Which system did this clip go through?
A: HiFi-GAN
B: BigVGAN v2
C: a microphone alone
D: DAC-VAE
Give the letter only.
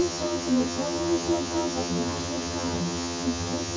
A